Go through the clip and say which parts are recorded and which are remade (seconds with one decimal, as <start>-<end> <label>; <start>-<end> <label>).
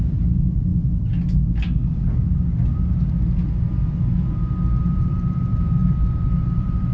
0.0-0.7 remade; 0.7-4.8 recorded; 4.8-5.8 remade; 5.8-6.3 recorded; 6.3-6.9 remade